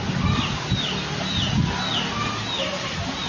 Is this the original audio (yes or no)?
yes